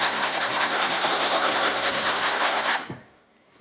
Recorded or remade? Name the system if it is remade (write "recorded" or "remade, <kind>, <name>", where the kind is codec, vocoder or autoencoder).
remade, codec, SNAC